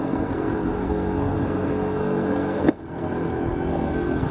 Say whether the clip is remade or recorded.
remade